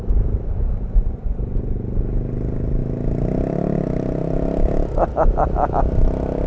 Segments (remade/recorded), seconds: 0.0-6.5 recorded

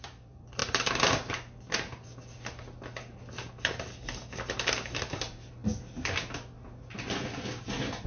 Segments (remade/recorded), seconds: 0.0-0.6 remade; 0.6-5.1 recorded; 5.1-5.6 remade; 5.6-8.1 recorded